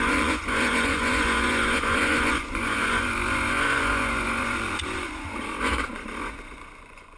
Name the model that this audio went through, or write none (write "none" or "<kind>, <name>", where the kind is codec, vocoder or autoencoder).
vocoder, Vocos